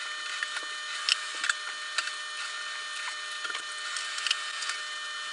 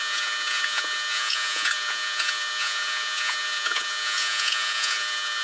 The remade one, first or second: second